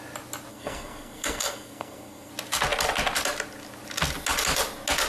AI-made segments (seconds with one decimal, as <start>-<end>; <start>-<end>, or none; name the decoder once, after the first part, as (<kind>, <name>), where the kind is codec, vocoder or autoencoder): 0.5-2.3 (codec, SNAC)